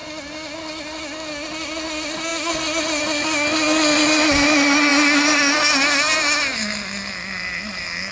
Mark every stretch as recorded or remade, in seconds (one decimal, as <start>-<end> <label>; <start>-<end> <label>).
0.0-8.1 recorded